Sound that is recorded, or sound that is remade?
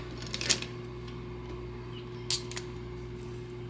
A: recorded